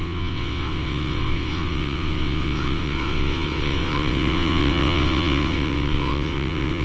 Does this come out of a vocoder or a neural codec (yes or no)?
yes